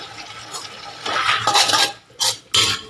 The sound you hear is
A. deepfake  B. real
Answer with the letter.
B